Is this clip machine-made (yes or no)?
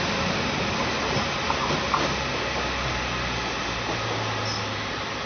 no